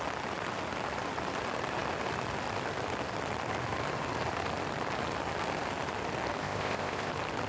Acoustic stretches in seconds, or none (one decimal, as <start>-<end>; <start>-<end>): 0.0-6.4; 7.1-7.5